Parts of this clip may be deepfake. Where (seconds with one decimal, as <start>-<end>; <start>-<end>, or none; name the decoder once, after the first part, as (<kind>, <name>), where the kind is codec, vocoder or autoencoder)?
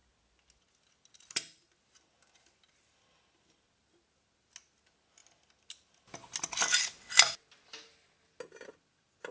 none